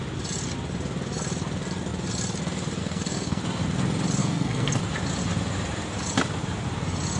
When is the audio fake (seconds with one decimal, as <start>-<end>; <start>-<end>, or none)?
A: 2.8-3.4; 4.2-4.8